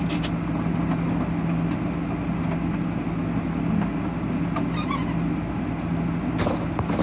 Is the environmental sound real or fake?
real